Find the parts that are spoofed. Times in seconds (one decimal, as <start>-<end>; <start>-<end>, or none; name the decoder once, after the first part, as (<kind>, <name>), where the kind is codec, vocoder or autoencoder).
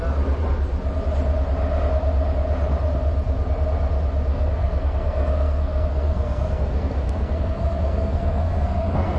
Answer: 4.3-9.2 (codec, SNAC)